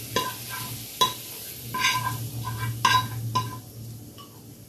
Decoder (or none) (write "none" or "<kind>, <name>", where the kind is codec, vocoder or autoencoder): none